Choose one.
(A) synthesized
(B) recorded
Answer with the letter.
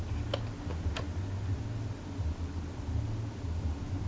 B